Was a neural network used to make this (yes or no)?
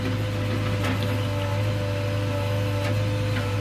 no